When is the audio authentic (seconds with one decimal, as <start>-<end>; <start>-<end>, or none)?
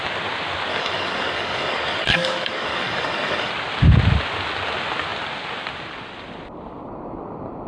0.0-0.7; 3.5-7.7